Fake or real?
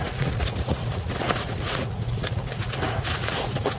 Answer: fake